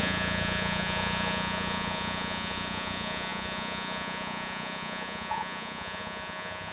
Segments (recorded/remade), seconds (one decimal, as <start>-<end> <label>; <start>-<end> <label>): 0.0-6.7 remade